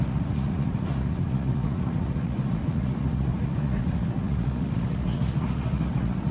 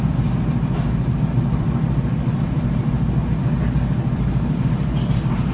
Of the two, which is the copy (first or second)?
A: first